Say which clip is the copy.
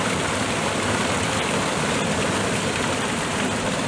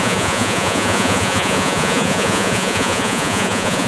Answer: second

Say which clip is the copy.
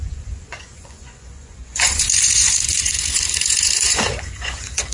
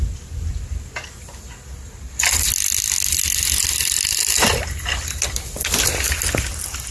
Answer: first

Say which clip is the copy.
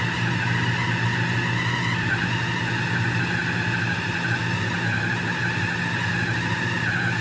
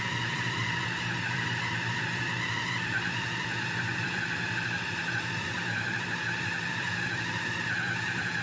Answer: second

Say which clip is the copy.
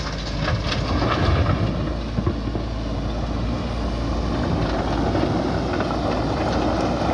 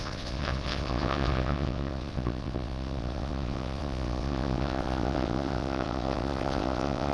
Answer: second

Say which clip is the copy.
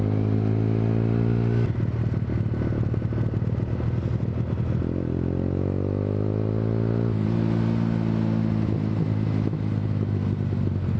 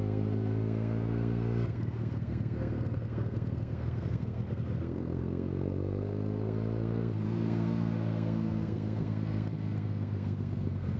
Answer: second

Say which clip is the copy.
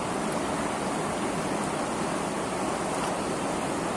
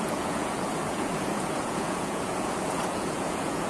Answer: second